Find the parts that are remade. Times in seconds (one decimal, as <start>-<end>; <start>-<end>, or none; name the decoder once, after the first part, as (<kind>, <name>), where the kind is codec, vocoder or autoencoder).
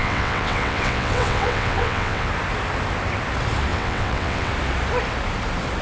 0.0-2.3 (vocoder, WaveNeXt); 3.7-4.5